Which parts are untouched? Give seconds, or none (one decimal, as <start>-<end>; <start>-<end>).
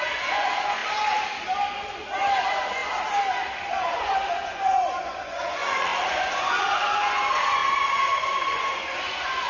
0.8-2.4; 2.8-3.7